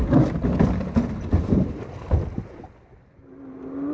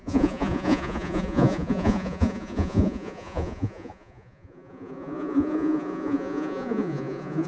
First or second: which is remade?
second